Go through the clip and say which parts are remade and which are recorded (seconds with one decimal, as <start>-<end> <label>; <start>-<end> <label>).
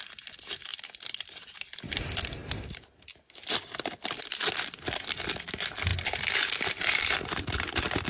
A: 0.0-8.1 recorded